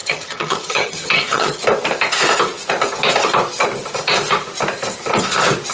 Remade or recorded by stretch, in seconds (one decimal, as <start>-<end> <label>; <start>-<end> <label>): 0.0-1.6 remade; 1.6-5.7 recorded